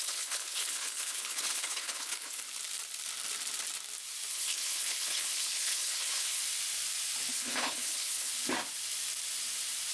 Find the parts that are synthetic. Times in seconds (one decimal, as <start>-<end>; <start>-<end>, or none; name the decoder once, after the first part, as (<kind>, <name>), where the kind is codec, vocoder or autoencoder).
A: 0.0-2.4 (codec, HILCodec); 4.3-6.4; 7.3-8.3